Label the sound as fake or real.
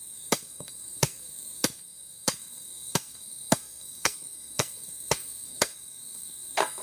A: fake